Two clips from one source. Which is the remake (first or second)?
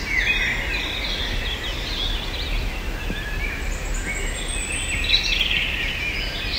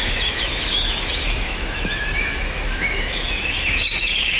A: second